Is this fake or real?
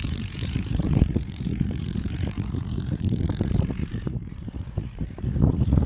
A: fake